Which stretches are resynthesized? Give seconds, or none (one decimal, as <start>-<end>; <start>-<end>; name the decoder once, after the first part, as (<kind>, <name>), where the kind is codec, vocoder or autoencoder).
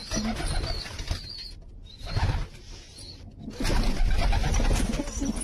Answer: none